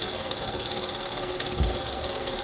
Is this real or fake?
fake